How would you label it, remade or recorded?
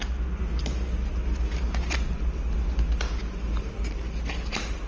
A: recorded